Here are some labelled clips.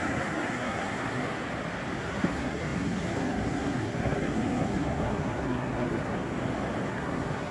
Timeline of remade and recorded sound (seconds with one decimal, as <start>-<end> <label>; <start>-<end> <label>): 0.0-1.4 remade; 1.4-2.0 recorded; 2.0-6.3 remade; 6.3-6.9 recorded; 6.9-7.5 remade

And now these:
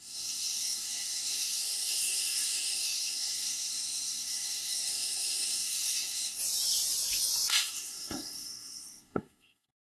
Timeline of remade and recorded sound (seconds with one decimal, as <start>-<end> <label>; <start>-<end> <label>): 0.0-6.4 remade; 6.4-7.5 recorded; 7.5-10.0 remade

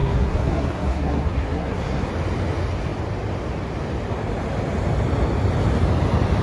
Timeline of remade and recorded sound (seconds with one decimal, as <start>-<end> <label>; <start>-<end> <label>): 0.0-2.1 remade; 2.1-6.4 recorded

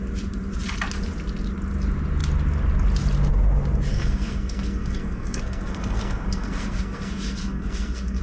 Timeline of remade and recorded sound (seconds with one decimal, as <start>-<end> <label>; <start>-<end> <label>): 0.0-3.9 recorded; 3.9-8.2 remade

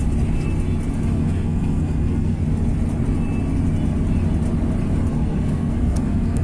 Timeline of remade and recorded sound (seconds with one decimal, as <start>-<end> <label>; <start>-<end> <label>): 0.0-1.2 recorded; 1.2-2.4 remade; 2.4-5.1 recorded; 5.1-6.4 remade

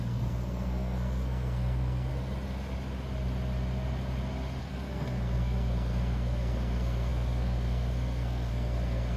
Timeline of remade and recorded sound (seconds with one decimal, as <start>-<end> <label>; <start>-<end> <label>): 0.0-2.1 remade; 2.1-4.6 recorded; 4.6-9.2 remade

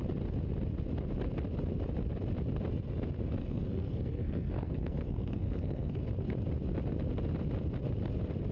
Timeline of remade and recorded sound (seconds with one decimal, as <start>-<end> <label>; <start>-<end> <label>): 0.0-3.4 recorded; 3.4-6.0 remade; 6.0-8.5 recorded